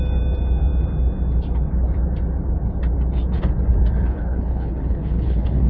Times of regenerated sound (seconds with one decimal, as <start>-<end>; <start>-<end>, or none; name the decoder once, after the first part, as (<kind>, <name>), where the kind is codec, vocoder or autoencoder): 4.1-5.7 (codec, HILCodec)